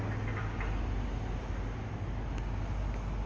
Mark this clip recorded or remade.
recorded